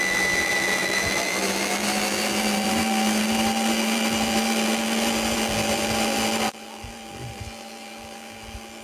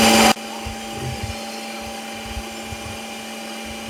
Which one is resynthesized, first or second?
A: first